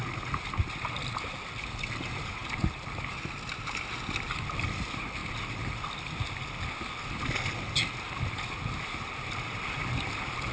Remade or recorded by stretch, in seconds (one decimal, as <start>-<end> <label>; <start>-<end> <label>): 0.0-10.5 recorded